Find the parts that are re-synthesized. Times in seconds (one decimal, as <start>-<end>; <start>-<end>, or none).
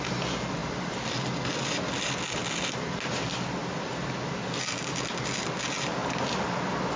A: 0.6-1.9; 6.0-6.6